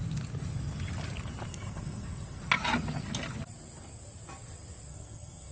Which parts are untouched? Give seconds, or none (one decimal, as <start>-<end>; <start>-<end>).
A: 0.0-1.5; 2.4-4.9